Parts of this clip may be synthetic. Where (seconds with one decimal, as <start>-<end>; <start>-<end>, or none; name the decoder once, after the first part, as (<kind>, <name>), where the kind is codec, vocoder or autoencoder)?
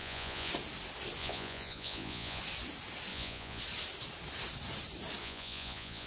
0.0-0.5 (vocoder, Vocos); 1.2-2.4; 3.1-3.6; 5.2-6.1